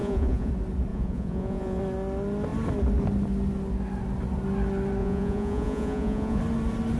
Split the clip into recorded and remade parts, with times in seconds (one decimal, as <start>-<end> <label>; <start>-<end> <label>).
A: 0.0-0.5 remade; 0.5-0.9 recorded; 0.9-1.8 remade; 1.8-5.0 recorded; 5.0-6.4 remade; 6.4-7.0 recorded